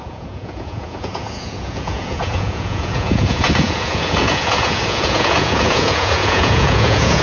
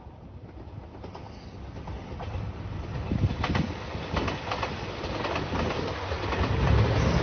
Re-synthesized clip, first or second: first